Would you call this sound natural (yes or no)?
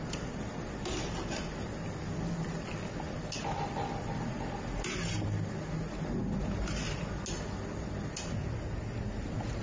yes